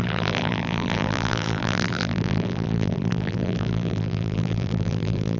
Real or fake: fake